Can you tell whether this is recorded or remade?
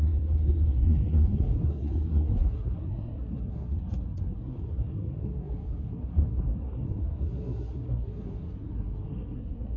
remade